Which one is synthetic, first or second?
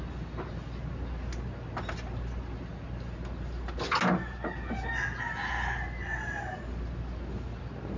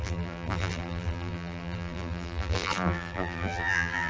second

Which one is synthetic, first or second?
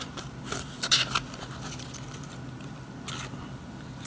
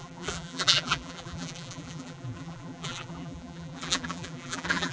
second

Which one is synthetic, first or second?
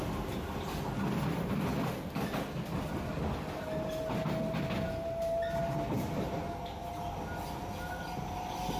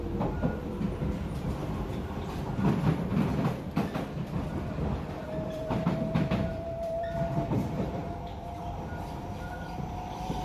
second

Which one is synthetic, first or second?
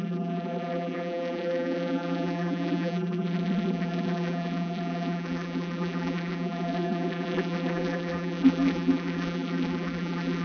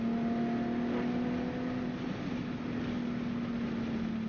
first